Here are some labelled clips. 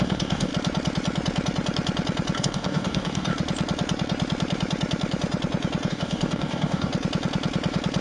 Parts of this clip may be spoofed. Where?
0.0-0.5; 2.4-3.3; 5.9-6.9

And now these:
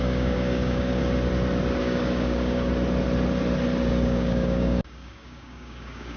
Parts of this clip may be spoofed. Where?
0.0-1.0; 1.8-2.7; 3.9-6.2

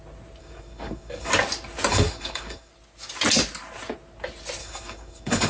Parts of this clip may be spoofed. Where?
0.4-1.3; 1.9-2.7; 4.6-5.5

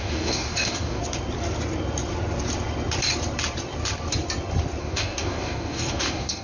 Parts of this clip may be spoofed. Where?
0.0-1.0; 4.8-6.4

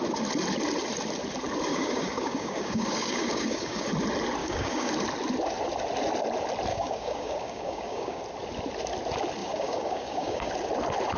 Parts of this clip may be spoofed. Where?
1.7-3.9; 4.4-4.9; 6.7-8.2; 9.4-10.5